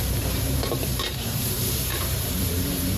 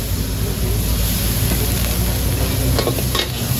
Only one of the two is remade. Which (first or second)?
first